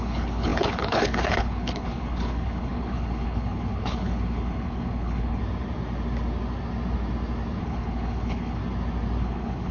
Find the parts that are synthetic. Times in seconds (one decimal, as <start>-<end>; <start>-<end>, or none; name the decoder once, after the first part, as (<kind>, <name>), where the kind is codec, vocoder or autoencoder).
0.0-5.4 (codec, HILCodec); 7.6-8.6; 9.2-9.7